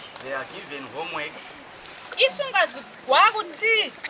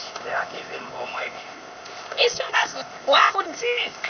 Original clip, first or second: first